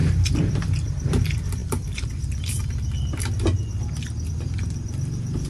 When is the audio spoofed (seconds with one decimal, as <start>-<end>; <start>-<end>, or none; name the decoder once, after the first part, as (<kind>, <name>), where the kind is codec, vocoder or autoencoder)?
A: none